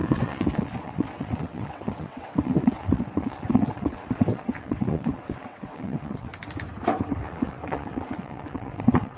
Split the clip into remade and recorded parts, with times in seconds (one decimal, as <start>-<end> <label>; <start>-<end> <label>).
0.0-6.3 remade; 6.3-7.1 recorded; 7.1-9.2 remade